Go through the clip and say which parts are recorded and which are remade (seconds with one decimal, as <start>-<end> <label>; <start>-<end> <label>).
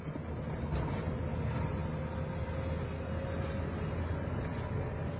0.0-5.2 recorded